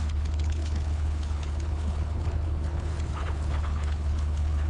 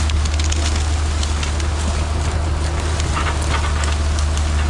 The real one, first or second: second